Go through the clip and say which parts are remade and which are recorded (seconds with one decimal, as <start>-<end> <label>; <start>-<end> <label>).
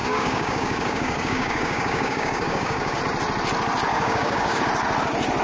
0.0-3.0 remade; 3.0-3.9 recorded; 3.9-4.6 remade; 4.6-5.4 recorded